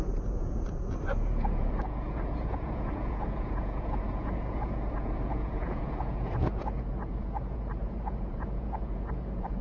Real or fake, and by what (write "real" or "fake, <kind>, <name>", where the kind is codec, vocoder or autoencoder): fake, vocoder, Vocos